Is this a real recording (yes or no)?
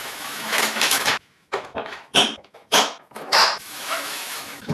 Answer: no